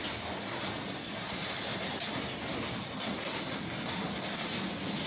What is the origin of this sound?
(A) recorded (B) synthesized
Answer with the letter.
A